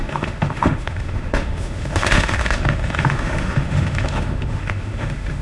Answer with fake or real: fake